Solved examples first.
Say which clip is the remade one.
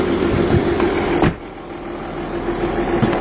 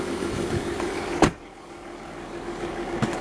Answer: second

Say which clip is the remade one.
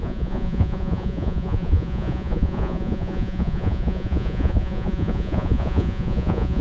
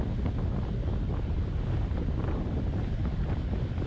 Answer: first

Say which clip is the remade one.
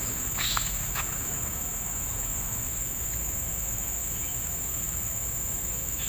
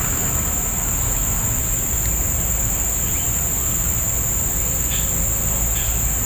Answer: first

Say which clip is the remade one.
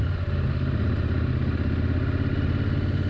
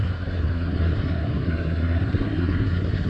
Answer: second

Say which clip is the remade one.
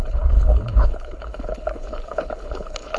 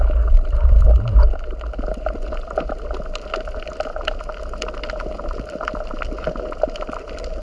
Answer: first